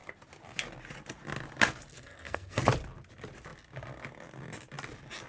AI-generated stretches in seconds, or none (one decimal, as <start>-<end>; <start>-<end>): 1.9-2.6